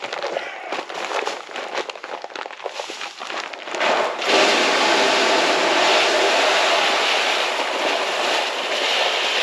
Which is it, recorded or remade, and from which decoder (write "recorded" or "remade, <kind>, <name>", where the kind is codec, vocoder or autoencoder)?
recorded